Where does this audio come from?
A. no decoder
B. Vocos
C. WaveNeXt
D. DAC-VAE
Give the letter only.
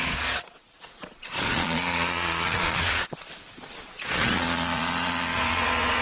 B